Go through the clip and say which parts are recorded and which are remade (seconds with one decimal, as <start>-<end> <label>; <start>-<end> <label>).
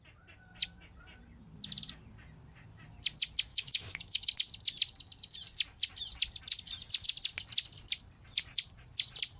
0.0-3.5 recorded; 3.5-4.3 remade; 4.3-9.4 recorded